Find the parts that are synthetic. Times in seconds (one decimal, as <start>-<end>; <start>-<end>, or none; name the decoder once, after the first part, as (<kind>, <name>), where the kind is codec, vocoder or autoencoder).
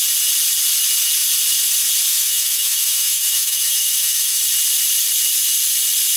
2.1-4.4 (autoencoder, DAC-VAE)